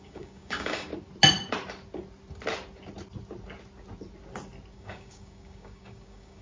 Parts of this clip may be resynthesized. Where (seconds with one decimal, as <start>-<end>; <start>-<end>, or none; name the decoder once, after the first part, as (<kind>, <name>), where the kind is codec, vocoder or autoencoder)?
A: 0.0-0.9 (codec, DAC); 4.7-6.4